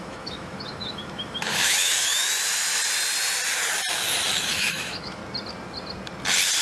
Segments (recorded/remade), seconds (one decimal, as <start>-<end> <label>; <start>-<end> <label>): 0.0-2.3 remade; 2.3-4.4 recorded; 4.4-5.2 remade; 5.2-6.6 recorded